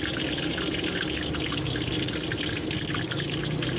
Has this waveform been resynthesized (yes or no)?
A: no